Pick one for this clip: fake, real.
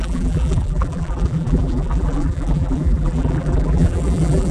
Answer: fake